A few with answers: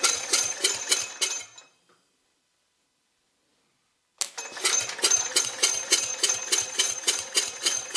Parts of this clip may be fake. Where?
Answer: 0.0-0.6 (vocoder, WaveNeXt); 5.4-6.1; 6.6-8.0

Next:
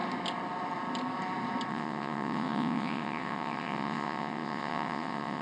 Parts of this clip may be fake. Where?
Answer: 1.7-5.4 (vocoder, WaveNeXt)

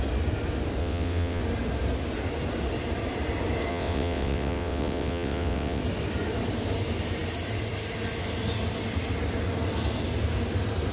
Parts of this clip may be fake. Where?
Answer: 0.8-1.4 (vocoder, WaveNeXt); 3.7-5.8

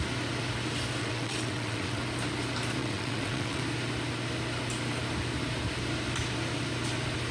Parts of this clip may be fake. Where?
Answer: 1.0-2.0 (vocoder, WaveNeXt); 2.8-3.6

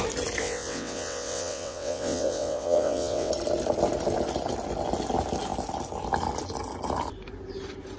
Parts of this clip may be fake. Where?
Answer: 0.4-3.3 (vocoder, WaveNeXt)